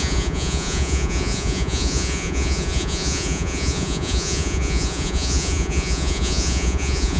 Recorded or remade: remade